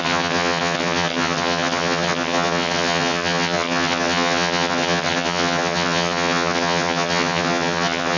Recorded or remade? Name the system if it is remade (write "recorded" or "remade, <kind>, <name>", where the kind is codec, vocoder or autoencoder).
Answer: remade, vocoder, HiFi-GAN